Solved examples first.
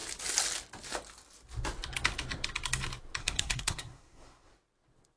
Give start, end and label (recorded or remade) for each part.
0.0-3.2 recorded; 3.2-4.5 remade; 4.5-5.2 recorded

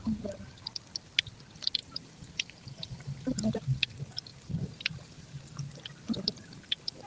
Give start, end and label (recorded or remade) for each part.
0.0-1.8 recorded; 1.8-3.8 remade; 3.8-4.3 recorded; 4.3-5.4 remade; 5.4-7.1 recorded

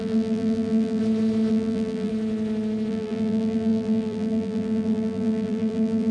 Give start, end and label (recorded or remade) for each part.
0.0-1.0 remade; 1.0-1.5 recorded; 1.5-2.1 remade; 2.1-2.9 recorded; 2.9-6.1 remade

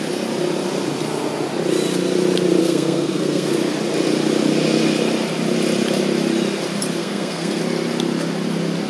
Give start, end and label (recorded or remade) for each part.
0.0-2.6 recorded; 2.6-3.5 remade; 3.5-7.0 recorded; 7.0-7.6 remade; 7.6-8.9 recorded

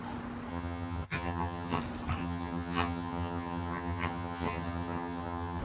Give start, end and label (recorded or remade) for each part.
0.0-0.5 recorded; 0.5-1.8 remade; 1.8-2.2 recorded; 2.2-5.6 remade

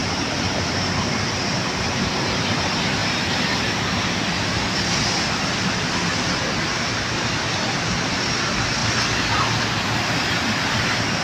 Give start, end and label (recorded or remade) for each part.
0.0-2.3 remade; 2.3-11.2 recorded

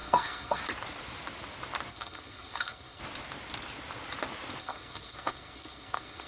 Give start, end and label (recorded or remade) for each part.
0.0-0.6 remade; 0.6-1.9 recorded; 1.9-3.0 remade; 3.0-4.6 recorded; 4.6-6.3 remade